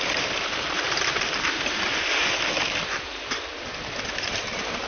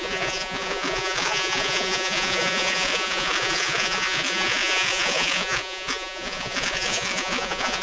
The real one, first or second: first